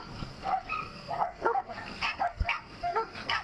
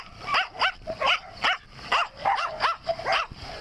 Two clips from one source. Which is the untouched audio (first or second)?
second